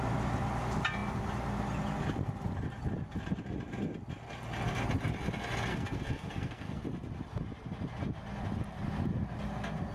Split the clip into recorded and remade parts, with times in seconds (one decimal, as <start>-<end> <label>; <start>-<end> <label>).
0.0-5.7 recorded; 5.7-6.8 remade; 6.8-9.9 recorded